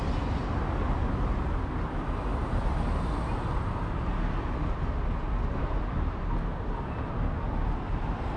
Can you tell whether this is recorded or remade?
recorded